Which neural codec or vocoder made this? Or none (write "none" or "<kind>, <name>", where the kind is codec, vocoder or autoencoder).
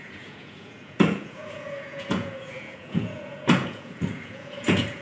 vocoder, Vocos